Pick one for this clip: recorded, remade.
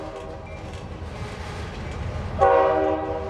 recorded